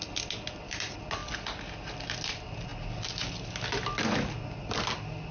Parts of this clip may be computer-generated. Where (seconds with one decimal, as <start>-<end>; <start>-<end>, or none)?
none